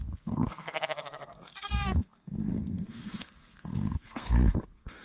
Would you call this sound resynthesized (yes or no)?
yes